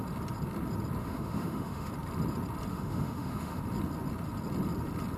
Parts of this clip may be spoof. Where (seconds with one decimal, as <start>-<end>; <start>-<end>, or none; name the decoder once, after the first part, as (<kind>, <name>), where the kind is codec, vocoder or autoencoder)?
1.0-1.9 (autoencoder, DAC-VAE); 2.7-3.6